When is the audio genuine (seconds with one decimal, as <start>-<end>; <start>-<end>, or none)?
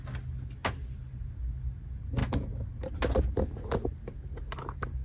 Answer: 0.0-5.0